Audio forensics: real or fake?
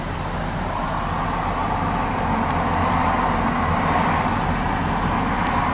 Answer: real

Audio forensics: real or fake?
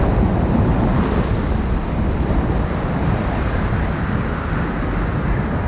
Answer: real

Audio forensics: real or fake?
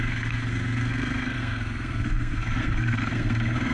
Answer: fake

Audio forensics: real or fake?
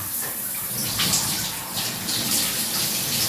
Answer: real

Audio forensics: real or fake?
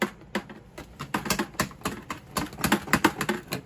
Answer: real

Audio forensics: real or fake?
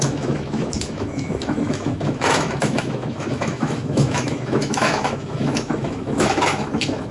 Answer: fake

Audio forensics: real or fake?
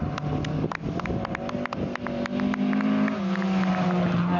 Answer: real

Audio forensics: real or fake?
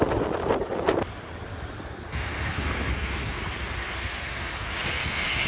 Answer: real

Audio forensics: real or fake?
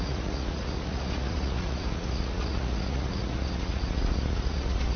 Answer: fake